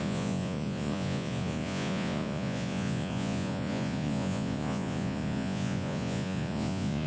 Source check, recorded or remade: remade